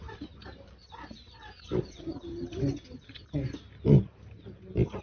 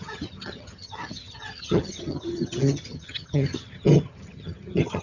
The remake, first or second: second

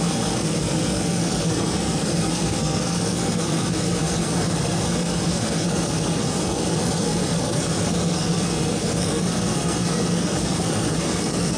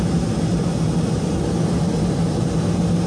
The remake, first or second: first